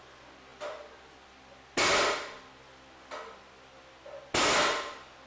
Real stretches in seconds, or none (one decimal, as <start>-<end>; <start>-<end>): 0.0-5.3